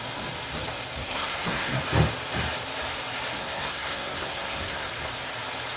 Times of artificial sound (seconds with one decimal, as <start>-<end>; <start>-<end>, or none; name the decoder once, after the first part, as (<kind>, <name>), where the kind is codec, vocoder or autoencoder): 1.0-1.8 (codec, SNAC); 3.4-4.9

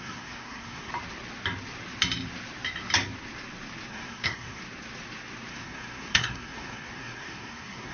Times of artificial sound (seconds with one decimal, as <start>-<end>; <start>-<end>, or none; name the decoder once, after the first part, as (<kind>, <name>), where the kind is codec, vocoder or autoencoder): 0.0-0.9 (codec, SNAC); 3.9-4.6; 5.5-7.9

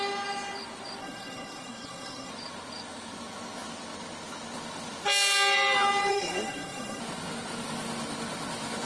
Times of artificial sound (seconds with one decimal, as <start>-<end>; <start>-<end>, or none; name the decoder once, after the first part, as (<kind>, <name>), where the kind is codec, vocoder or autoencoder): 1.0-2.3 (codec, SNAC); 6.1-7.0

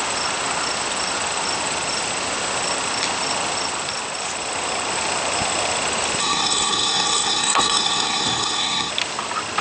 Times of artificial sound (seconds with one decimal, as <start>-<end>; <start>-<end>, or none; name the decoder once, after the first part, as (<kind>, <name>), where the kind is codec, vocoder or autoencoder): 6.2-8.9 (codec, SNAC)

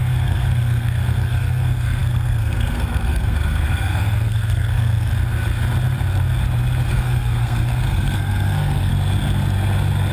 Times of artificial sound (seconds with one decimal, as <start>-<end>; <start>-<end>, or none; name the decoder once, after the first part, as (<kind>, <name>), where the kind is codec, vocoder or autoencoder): 0.0-5.1 (codec, SNAC); 6.9-8.9

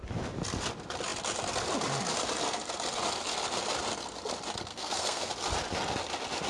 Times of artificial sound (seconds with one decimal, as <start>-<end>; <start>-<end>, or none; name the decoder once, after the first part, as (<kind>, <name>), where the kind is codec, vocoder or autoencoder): 4.7-5.3 (codec, SNAC)

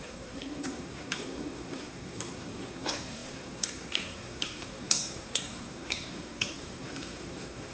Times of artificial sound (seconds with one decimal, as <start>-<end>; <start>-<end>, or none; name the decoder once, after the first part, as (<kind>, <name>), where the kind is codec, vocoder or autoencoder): 0.0-7.7 (codec, SNAC)

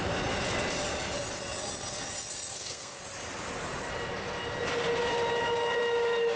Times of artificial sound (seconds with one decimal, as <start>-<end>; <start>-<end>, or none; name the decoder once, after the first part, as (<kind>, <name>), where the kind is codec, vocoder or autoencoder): 2.5-3.0 (codec, SNAC)